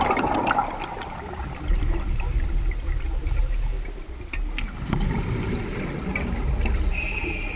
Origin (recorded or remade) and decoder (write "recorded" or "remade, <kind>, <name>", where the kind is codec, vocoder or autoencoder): recorded